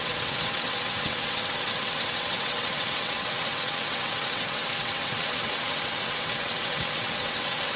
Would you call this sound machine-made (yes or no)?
yes